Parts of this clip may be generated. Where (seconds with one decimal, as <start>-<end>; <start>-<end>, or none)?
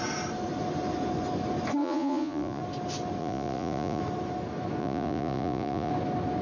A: 1.8-2.6; 3.2-4.0; 4.8-5.9